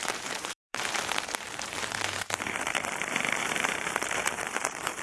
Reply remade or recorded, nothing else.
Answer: remade